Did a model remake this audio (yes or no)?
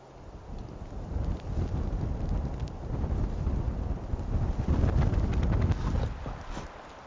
no